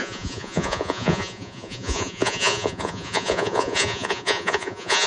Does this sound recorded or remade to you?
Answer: remade